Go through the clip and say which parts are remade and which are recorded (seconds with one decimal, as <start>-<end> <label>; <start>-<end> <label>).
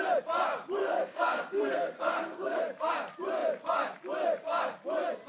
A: 0.0-0.8 recorded; 0.8-2.6 remade; 2.6-5.3 recorded